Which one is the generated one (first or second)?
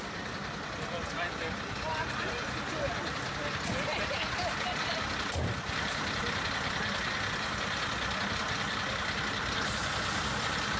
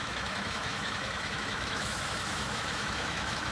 second